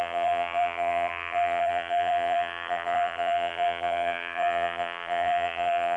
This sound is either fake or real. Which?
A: fake